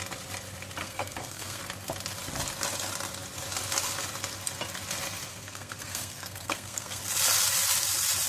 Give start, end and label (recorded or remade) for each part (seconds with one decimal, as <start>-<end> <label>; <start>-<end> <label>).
0.0-0.8 recorded; 0.8-1.6 remade; 1.6-5.3 recorded; 5.3-7.0 remade; 7.0-8.3 recorded